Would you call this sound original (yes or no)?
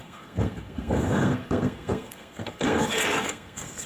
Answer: no